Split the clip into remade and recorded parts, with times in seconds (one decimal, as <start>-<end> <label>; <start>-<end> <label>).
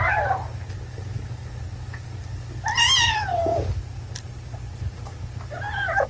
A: 0.0-6.1 recorded